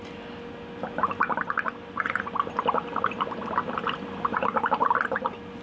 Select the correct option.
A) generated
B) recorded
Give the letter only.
B